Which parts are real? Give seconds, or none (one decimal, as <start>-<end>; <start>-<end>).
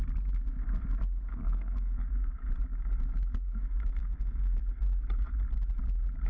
0.0-1.3; 2.1-4.0; 4.6-6.3